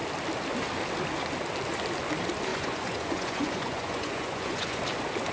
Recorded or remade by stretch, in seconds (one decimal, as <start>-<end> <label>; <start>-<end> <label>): 0.0-2.5 recorded; 2.5-4.8 remade; 4.8-5.3 recorded